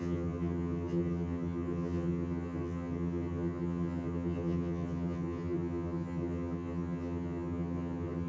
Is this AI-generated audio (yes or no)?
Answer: yes